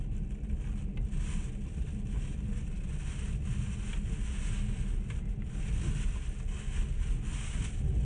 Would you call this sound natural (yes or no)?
yes